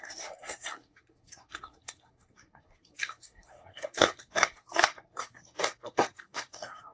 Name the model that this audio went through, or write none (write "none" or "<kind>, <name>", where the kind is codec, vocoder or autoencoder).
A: codec, SNAC